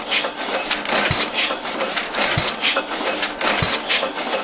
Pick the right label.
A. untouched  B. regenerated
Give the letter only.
A